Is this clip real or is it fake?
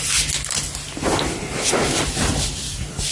real